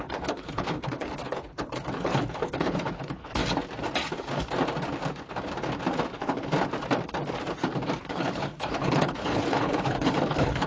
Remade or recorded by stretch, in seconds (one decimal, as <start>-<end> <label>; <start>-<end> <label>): 0.0-3.4 remade; 3.4-6.1 recorded; 6.1-6.5 remade; 6.5-8.0 recorded; 8.0-10.7 remade